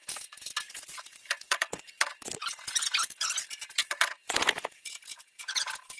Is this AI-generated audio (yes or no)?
yes